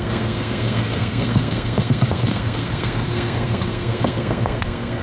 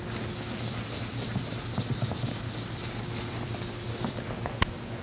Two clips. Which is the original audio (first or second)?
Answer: second